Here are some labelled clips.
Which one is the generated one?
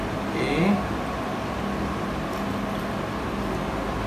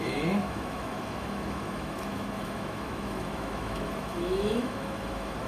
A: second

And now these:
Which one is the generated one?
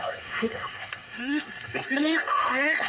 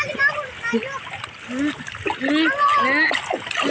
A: first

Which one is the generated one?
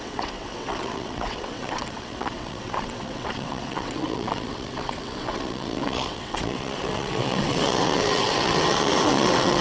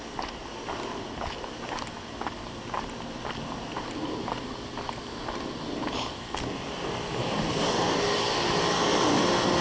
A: first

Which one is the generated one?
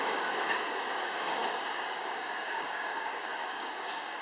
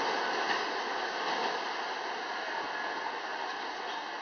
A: first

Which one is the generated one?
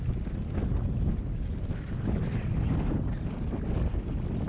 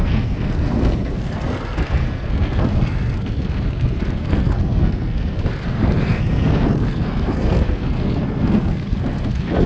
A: second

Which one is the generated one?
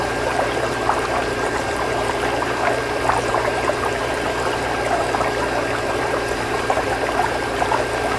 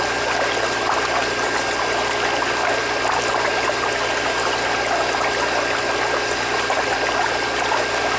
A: first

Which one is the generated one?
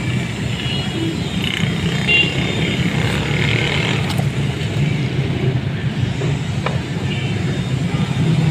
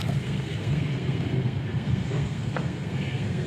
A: second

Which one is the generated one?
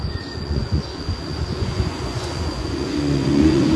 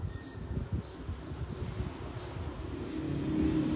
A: first